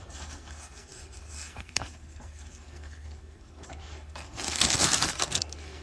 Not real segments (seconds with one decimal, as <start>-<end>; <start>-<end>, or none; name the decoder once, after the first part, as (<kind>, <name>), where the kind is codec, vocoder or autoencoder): 0.0-5.8 (codec, SNAC)